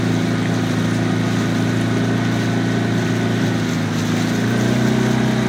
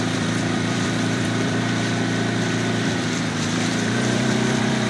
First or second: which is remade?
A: second